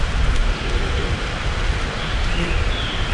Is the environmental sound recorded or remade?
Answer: recorded